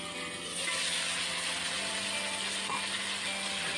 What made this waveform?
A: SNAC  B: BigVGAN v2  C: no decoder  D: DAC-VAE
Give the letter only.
C